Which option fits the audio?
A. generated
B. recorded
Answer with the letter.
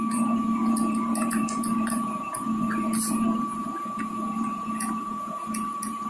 A